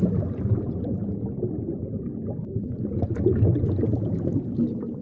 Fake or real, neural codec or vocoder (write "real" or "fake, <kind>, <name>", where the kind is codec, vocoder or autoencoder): real